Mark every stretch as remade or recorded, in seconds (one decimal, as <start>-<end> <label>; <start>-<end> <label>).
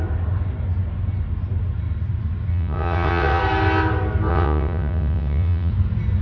0.0-2.5 recorded; 2.5-3.4 remade; 3.4-4.3 recorded; 4.3-5.7 remade; 5.7-6.2 recorded